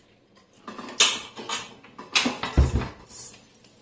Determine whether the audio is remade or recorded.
recorded